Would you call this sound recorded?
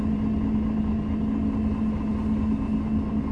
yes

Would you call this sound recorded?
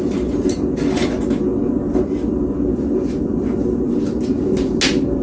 yes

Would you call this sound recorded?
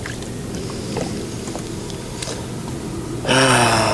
yes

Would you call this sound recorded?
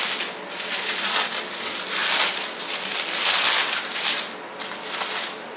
yes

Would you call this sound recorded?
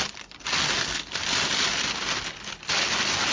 yes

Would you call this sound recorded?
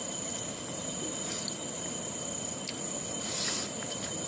yes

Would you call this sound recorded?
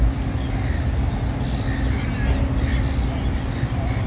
yes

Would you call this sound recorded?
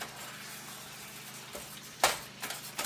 yes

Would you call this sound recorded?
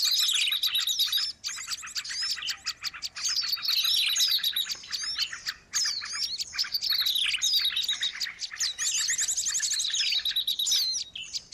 yes